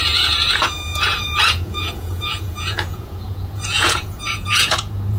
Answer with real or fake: fake